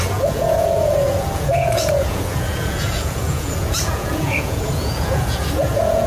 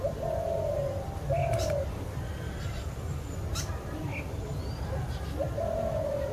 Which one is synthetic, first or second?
first